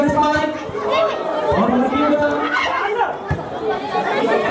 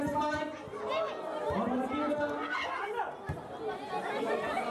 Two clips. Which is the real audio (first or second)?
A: second